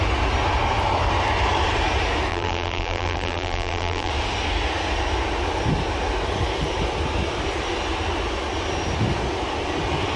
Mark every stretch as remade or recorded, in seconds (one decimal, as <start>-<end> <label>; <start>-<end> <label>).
0.0-2.3 recorded; 2.3-4.1 remade; 4.1-10.2 recorded